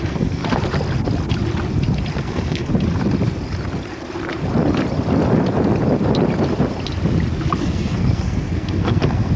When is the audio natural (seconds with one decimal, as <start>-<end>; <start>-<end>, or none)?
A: 0.4-2.1; 2.7-7.6